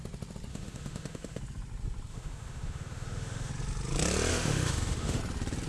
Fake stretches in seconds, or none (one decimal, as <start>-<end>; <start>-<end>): 0.5-1.4; 2.1-3.5; 4.3-5.2

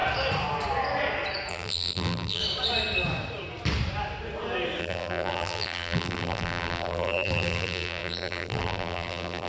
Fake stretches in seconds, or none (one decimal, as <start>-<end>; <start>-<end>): 1.5-2.4; 4.8-9.5

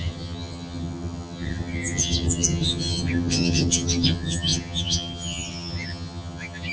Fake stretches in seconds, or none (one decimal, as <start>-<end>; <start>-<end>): 0.0-6.7

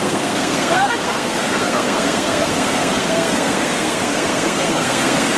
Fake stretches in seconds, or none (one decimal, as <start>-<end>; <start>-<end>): 0.0-5.4

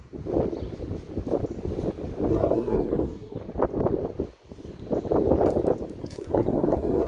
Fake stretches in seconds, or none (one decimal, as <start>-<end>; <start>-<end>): 2.3-3.4; 6.0-7.1

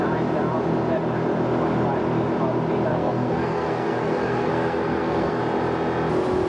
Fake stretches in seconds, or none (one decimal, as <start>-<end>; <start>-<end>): 2.9-5.4

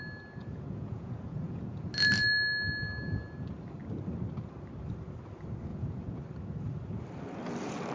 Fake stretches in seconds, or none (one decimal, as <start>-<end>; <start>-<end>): 0.4-1.9; 5.7-6.2

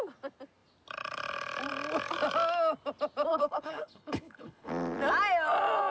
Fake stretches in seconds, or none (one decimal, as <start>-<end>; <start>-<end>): 3.3-4.7